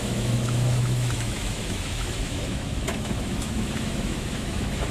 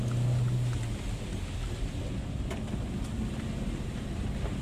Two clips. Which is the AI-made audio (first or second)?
first